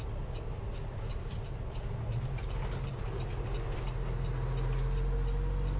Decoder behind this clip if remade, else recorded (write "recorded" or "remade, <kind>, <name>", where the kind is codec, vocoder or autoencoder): recorded